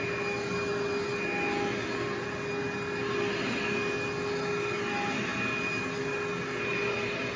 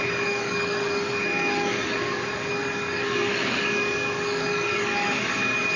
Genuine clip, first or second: first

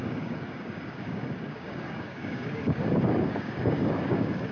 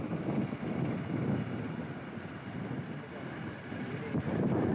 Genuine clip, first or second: second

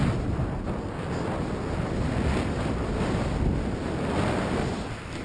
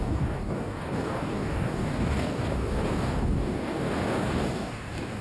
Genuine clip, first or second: first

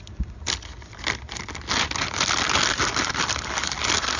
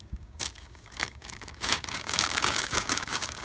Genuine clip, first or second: first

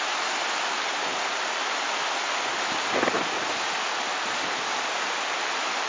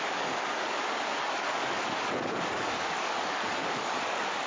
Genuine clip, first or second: first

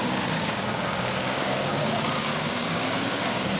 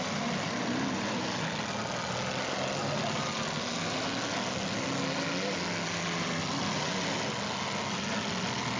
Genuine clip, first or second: second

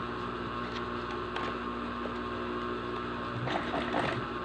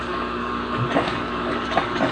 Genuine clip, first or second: first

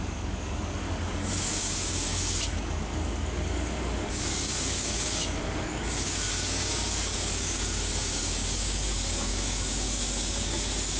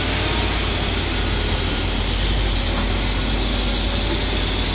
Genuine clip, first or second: second